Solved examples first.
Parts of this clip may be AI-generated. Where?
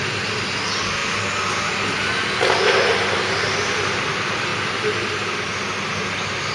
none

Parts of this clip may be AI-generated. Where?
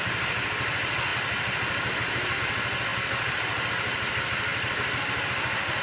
none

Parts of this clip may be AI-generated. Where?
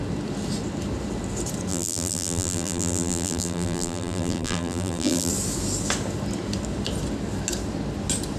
1.7-5.3 (vocoder, BigVGAN v2)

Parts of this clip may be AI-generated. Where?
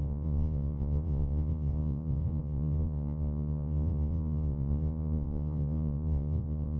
0.0-6.8 (vocoder, Vocos)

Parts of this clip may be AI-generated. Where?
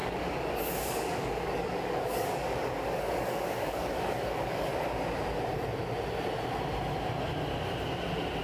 0.0-4.7 (codec, DAC)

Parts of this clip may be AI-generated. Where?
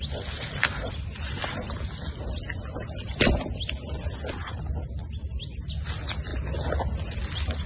none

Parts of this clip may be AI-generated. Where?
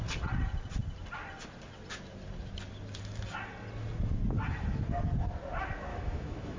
5.9-6.6 (autoencoder, DAC-VAE)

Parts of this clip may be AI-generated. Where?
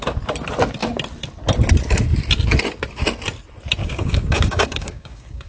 3.8-5.5 (codec, DAC)